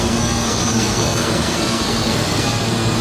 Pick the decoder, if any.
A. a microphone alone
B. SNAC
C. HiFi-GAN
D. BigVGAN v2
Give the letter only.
B